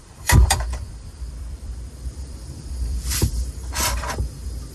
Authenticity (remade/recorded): remade